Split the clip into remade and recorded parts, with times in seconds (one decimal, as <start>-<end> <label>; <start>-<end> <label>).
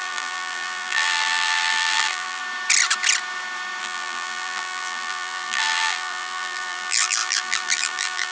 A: 0.0-2.4 remade; 2.4-3.8 recorded; 3.8-8.3 remade